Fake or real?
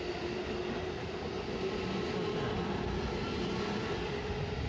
real